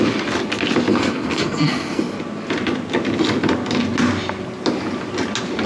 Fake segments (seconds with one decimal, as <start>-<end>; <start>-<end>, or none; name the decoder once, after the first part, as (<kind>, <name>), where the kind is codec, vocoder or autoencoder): 0.9-2.0 (codec, SNAC)